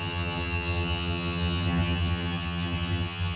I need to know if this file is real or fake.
fake